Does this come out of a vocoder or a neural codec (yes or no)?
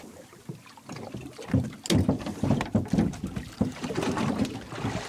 no